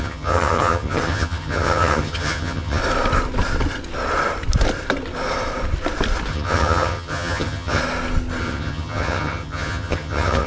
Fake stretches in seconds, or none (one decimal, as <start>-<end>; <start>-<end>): 0.0-2.8; 6.3-7.8; 8.4-10.5